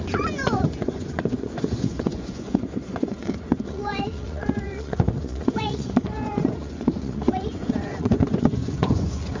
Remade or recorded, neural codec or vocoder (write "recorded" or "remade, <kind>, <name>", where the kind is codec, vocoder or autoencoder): remade, vocoder, Vocos